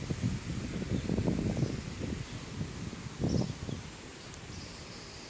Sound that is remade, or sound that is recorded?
recorded